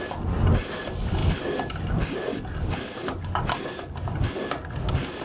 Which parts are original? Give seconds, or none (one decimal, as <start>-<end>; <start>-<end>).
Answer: 0.0-5.2